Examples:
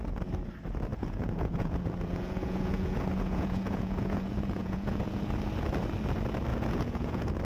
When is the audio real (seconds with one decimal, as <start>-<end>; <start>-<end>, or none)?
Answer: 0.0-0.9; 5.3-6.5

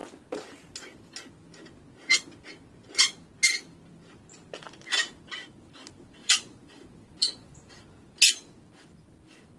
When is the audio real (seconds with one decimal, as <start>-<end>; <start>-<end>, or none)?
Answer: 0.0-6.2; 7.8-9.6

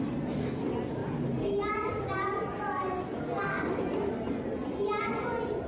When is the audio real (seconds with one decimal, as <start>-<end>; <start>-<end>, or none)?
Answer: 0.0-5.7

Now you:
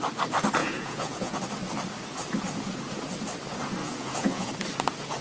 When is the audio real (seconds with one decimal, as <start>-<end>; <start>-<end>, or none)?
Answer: 0.0-0.6; 1.4-3.8; 4.5-5.2

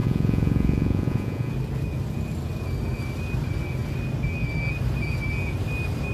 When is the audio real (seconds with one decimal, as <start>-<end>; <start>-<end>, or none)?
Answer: 1.5-6.1